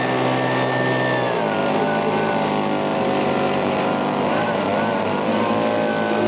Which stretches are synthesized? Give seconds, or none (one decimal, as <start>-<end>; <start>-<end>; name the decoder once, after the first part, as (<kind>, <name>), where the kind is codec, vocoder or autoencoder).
1.6-2.5 (vocoder, BigVGAN v2); 2.9-5.5